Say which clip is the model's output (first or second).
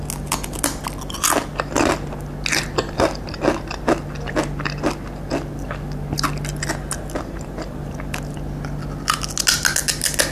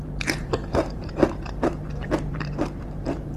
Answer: second